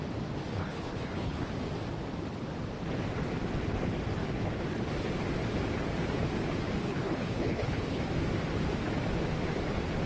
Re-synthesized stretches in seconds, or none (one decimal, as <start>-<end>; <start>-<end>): 0.6-1.5; 6.8-8.0